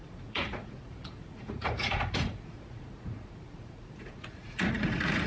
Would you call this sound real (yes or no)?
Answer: no